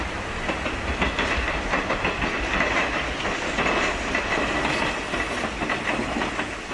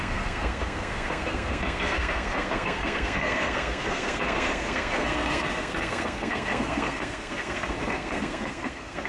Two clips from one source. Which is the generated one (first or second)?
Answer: second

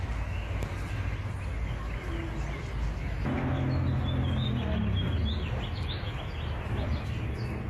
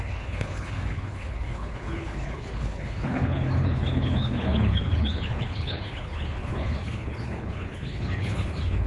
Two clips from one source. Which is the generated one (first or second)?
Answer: second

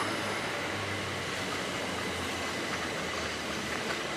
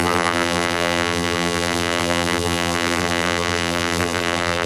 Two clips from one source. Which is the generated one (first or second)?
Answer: second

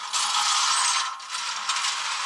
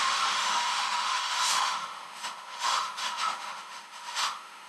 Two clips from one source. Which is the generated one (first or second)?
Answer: second